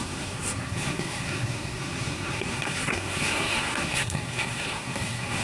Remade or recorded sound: remade